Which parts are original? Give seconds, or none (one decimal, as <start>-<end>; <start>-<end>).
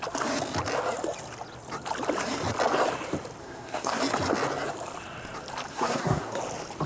0.0-3.4; 4.0-5.7; 6.4-6.9